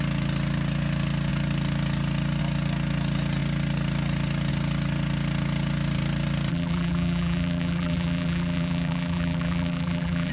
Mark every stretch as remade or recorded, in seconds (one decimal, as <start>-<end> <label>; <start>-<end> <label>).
0.0-6.5 recorded; 6.5-10.3 remade